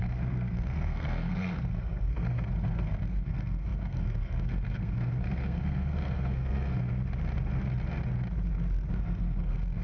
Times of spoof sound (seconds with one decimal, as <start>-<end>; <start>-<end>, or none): 0.0-6.9; 8.9-9.8